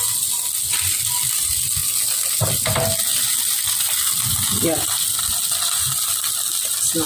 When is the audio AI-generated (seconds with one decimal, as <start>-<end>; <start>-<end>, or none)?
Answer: none